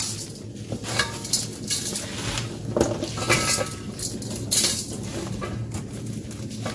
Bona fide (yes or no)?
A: yes